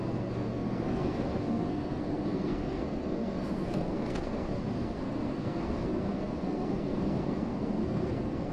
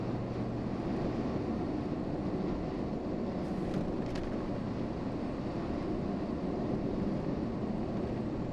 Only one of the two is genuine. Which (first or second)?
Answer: second